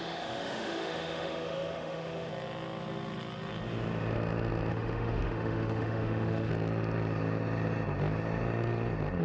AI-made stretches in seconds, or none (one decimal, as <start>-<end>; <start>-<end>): 0.0-2.3; 4.7-6.5